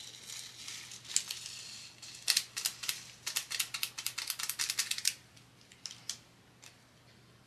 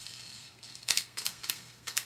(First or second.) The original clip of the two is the first